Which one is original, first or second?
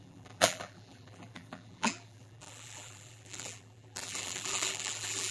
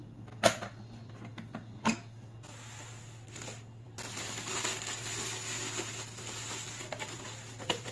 second